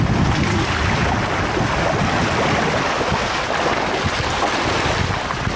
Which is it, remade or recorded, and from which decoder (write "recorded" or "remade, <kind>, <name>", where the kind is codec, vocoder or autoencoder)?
recorded